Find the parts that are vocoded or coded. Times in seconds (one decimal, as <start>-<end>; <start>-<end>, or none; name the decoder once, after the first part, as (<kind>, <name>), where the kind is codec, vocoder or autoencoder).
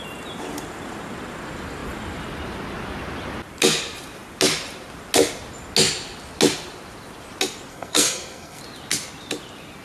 7.7-8.6 (codec, SNAC)